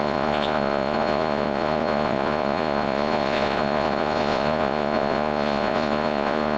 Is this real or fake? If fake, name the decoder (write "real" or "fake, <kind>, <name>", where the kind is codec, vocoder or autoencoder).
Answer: fake, vocoder, Vocos